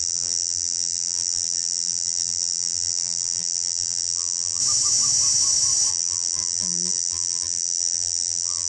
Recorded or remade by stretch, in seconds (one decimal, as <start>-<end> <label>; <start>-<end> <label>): 0.0-4.6 remade; 4.6-5.9 recorded; 5.9-8.7 remade